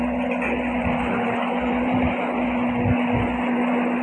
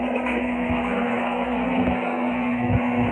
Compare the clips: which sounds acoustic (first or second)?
first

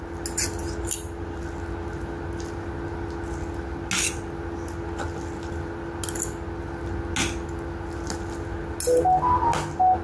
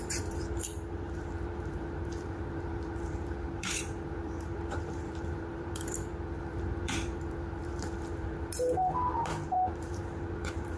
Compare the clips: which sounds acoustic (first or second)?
first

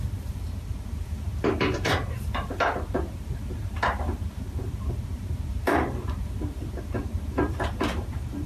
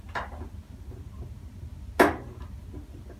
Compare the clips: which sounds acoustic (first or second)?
second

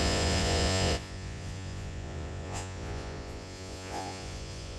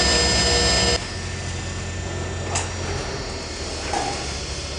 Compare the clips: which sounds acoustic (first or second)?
second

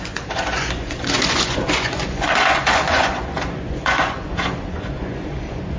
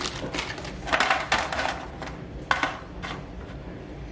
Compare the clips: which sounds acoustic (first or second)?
second